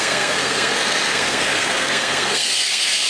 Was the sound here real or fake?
fake